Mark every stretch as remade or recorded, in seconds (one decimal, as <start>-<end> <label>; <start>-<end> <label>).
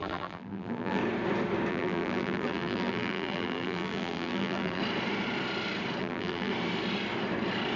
0.0-1.0 remade; 1.0-1.7 recorded; 1.7-4.8 remade; 4.8-6.0 recorded; 6.0-6.5 remade; 6.5-7.8 recorded